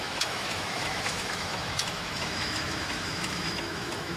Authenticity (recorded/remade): remade